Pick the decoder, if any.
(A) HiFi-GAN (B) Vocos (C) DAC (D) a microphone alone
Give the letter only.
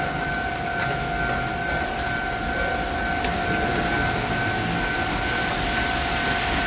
D